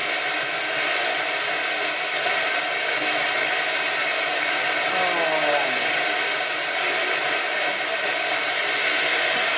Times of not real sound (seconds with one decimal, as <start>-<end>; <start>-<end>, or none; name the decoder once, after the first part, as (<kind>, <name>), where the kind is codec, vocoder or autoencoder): none